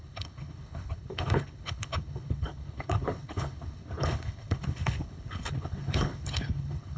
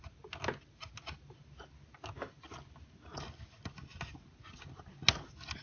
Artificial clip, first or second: first